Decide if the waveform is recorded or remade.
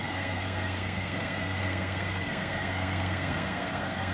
remade